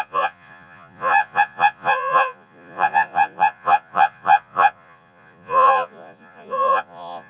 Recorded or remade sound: remade